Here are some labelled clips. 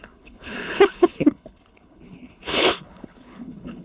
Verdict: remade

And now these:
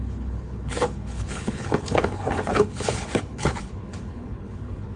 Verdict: remade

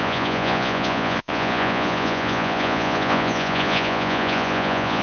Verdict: remade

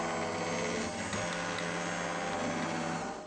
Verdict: recorded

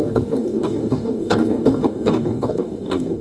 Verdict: remade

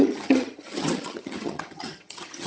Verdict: remade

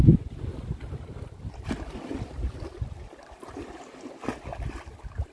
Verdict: recorded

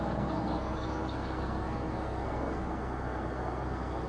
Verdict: remade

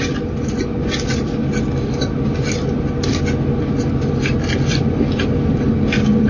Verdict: recorded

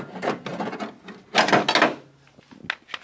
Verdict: recorded